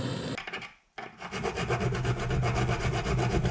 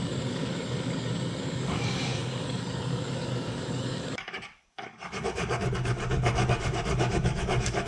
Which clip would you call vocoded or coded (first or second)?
second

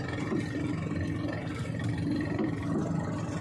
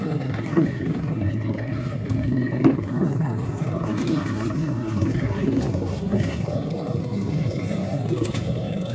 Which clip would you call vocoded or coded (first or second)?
second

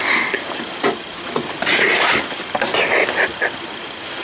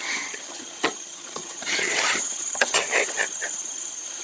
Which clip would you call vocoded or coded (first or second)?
second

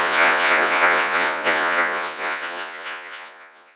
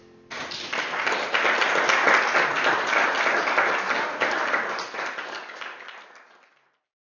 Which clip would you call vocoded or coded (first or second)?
first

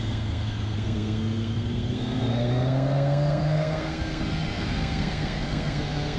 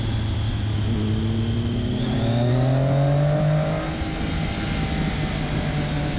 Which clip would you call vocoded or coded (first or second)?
first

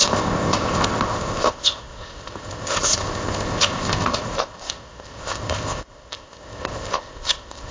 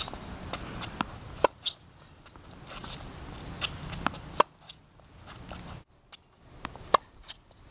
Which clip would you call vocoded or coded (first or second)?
first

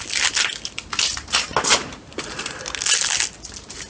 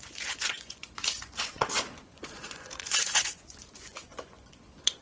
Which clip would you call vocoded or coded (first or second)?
second